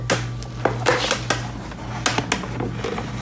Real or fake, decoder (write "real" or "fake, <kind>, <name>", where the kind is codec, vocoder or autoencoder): real